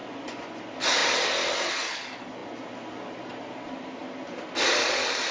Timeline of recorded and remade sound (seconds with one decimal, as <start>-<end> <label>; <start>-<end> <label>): 0.0-0.6 remade; 0.6-5.3 recorded